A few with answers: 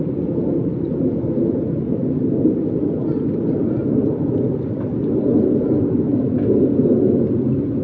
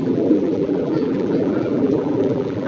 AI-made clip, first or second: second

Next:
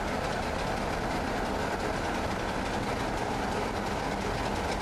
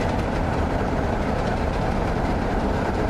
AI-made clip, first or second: second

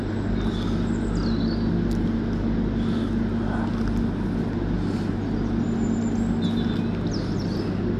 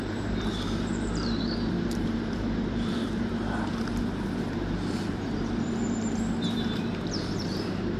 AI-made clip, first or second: second